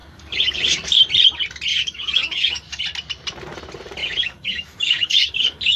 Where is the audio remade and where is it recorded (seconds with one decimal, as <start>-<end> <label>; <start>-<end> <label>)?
0.0-1.0 remade; 1.0-1.7 recorded; 1.7-2.8 remade; 2.8-4.0 recorded; 4.0-5.8 remade